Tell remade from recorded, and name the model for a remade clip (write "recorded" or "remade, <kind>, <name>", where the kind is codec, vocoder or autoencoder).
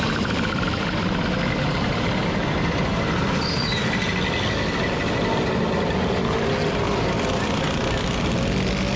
recorded